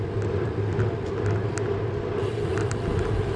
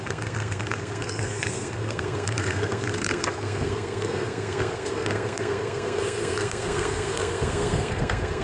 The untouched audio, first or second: first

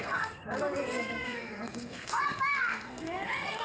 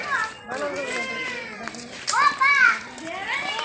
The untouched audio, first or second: second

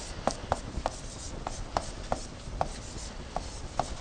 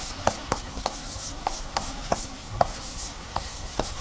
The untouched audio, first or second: first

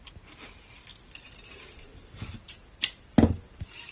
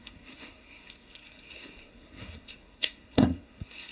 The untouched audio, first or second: first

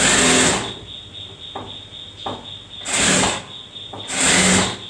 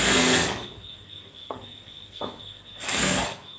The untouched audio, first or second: first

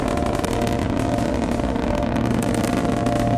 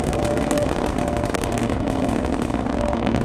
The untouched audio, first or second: first